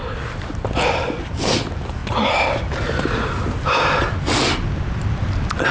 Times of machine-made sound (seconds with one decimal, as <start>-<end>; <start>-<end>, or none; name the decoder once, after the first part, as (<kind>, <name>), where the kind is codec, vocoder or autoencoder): none